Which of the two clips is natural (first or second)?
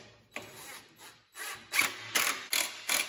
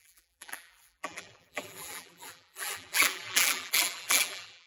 first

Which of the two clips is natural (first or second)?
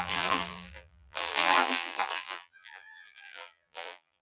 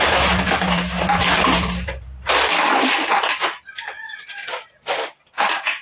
second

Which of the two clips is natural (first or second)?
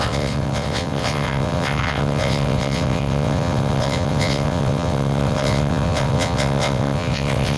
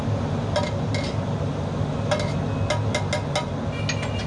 second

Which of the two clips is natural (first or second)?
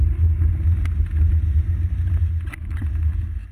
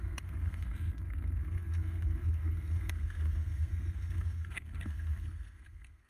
first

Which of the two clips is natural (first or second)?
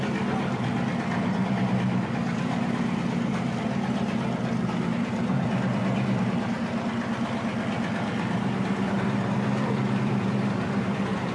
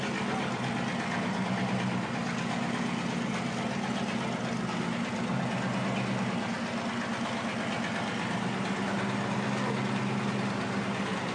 second